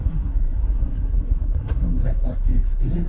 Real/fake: fake